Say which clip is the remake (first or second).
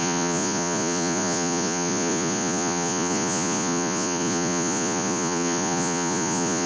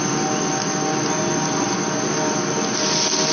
first